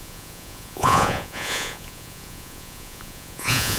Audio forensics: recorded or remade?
remade